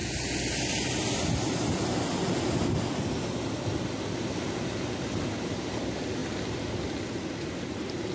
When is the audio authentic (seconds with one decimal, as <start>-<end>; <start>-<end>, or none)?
0.0-8.1

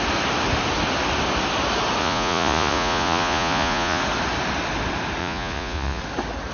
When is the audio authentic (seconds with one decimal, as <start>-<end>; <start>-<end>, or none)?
0.0-2.0; 4.0-5.2; 6.0-6.5